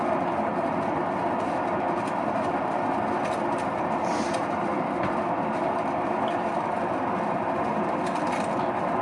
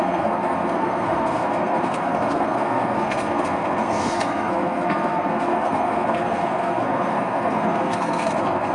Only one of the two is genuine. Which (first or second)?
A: first